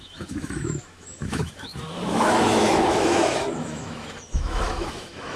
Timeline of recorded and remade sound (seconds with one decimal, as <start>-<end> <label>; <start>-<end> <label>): 0.0-5.4 remade